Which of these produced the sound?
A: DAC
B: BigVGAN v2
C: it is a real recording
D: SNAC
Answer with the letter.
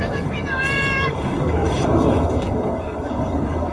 A